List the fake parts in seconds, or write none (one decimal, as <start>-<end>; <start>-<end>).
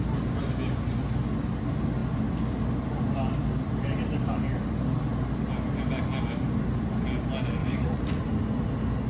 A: 7.6-8.2